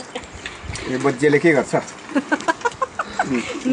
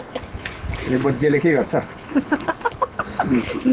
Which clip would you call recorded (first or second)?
first